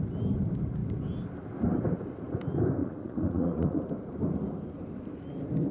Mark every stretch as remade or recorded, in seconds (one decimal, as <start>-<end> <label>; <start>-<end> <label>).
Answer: 0.0-2.8 recorded; 2.8-3.8 remade; 3.8-5.7 recorded